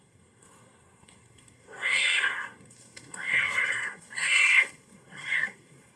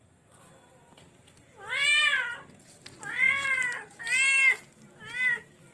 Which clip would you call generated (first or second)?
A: first